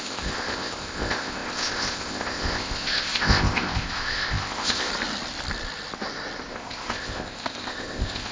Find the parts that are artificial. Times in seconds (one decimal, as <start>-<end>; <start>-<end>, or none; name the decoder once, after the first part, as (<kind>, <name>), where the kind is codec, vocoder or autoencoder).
0.0-4.9 (codec, ZipCodec); 6.5-8.3